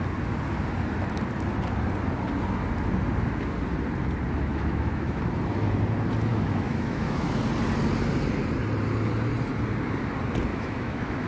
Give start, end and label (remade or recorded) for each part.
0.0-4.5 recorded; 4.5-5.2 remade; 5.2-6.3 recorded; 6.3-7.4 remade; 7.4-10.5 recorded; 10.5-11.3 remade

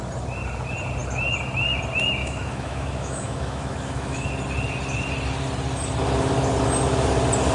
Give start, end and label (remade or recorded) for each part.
0.0-2.2 recorded; 2.2-4.3 remade; 4.3-7.5 recorded

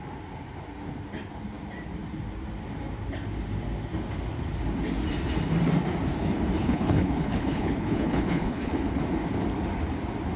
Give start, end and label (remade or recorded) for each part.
0.0-6.6 recorded; 6.6-8.7 remade; 8.7-10.4 recorded